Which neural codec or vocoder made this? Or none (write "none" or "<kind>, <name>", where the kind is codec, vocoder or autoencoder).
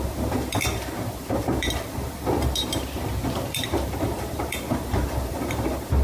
vocoder, BigVGAN v2